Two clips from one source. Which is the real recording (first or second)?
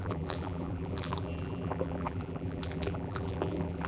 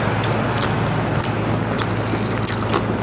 second